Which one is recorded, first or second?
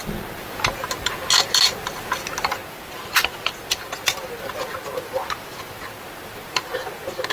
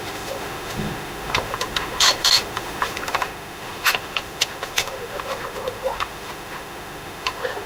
first